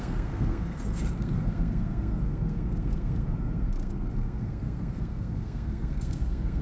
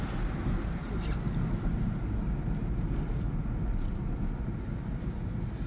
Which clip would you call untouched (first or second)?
second